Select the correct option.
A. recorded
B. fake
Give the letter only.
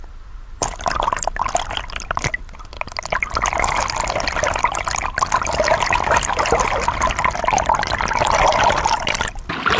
A